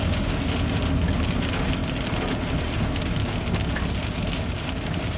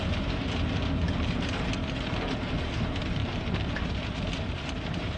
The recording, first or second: first